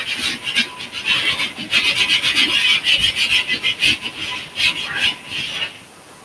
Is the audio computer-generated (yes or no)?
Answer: no